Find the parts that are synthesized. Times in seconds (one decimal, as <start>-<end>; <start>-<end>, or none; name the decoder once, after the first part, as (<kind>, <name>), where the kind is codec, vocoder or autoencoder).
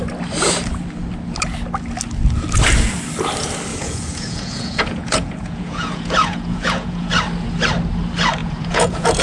3.7-7.1 (vocoder, Vocos); 8.4-9.2